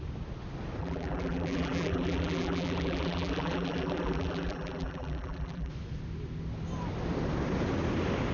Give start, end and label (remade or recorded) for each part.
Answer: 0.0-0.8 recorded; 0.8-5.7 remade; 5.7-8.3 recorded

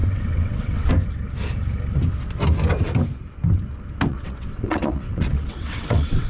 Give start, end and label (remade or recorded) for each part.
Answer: 0.0-0.9 remade; 0.9-4.1 recorded; 4.1-6.3 remade

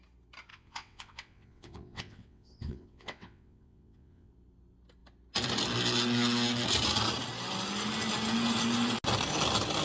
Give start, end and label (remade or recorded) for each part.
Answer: 0.0-0.5 recorded; 0.5-4.3 remade; 4.3-9.8 recorded